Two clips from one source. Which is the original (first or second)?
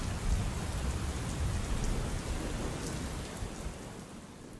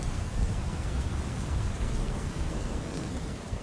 first